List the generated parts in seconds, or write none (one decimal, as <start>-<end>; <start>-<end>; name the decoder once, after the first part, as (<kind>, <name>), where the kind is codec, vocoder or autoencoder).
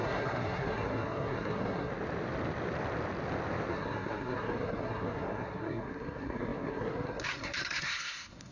0.0-1.9 (codec, SNAC); 3.7-8.5